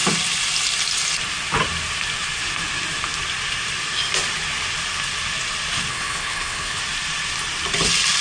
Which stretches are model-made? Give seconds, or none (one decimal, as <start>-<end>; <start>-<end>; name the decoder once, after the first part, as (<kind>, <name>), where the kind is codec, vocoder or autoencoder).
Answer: 5.9-6.8 (codec, HILCodec)